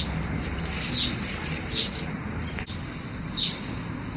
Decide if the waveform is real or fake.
real